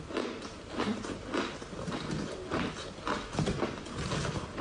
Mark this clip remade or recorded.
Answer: recorded